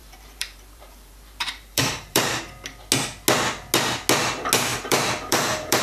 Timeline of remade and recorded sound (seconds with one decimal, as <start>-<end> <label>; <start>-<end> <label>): 0.0-2.4 remade; 2.4-4.7 recorded; 4.7-5.8 remade